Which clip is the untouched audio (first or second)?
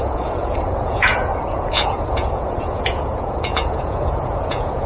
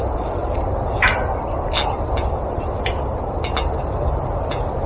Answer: second